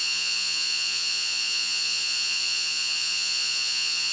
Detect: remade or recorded remade